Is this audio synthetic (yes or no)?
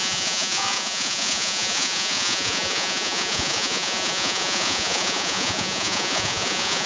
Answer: yes